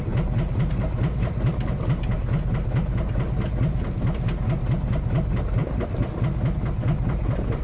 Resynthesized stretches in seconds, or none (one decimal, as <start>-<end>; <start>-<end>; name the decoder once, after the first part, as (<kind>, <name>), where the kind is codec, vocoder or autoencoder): none